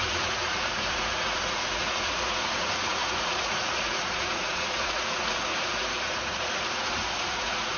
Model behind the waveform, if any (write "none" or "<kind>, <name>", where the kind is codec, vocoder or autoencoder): vocoder, Vocos